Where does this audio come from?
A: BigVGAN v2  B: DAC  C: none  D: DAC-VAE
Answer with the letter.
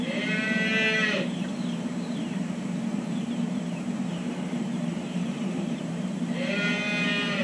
A